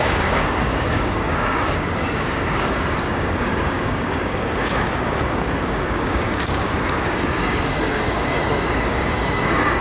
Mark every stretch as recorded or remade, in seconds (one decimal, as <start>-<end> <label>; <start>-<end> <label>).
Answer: 0.0-9.8 remade